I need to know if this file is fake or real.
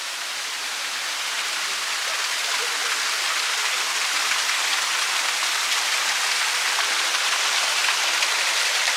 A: real